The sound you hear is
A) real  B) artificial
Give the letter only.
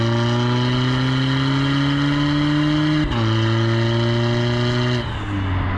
A